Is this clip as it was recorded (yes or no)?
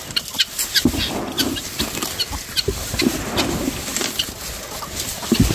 yes